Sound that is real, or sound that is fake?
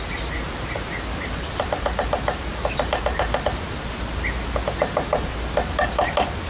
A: real